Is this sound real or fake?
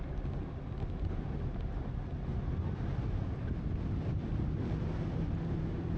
real